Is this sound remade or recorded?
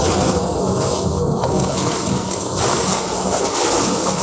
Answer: remade